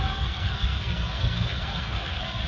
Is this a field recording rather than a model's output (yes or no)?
no